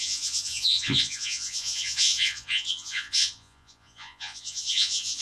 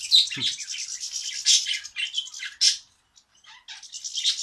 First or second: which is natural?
second